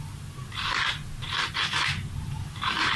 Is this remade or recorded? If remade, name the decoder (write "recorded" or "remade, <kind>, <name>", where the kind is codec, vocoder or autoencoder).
recorded